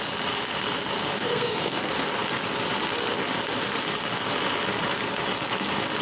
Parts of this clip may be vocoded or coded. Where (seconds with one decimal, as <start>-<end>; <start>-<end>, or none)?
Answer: 1.1-1.8